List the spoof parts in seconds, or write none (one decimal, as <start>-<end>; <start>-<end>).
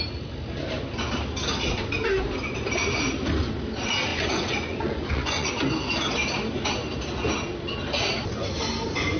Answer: 4.1-5.5